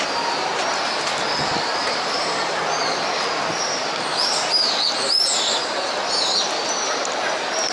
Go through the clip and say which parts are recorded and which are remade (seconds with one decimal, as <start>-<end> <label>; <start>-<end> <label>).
0.0-1.8 recorded; 1.8-2.6 remade; 2.6-7.7 recorded